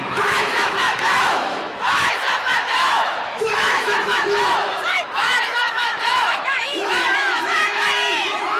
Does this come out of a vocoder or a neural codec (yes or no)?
yes